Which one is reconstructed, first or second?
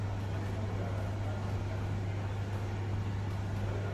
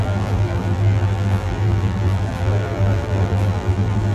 second